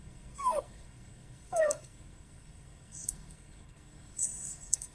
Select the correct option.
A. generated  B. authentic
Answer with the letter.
A